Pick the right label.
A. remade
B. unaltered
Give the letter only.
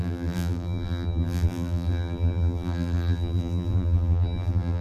A